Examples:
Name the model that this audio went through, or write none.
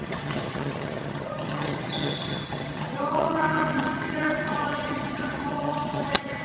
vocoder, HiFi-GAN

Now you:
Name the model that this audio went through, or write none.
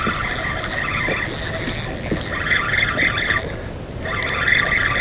none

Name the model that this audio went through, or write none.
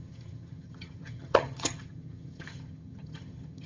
vocoder, HiFi-GAN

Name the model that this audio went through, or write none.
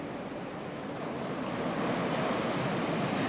none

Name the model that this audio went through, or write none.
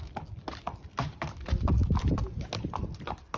none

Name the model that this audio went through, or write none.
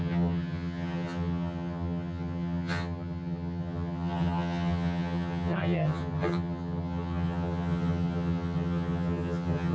vocoder, HiFi-GAN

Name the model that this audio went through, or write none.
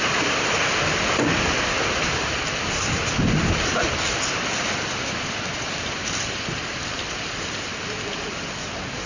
none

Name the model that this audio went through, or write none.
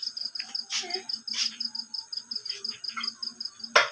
none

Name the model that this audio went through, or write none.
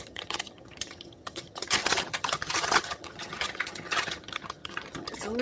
vocoder, HiFi-GAN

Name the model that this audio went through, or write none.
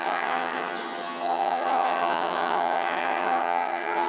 vocoder, HiFi-GAN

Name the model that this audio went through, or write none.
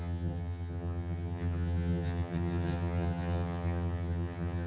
vocoder, HiFi-GAN